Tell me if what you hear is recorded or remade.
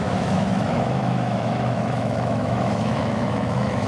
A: remade